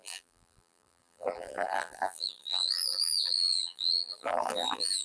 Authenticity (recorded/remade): remade